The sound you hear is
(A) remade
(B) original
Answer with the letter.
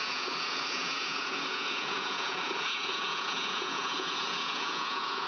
A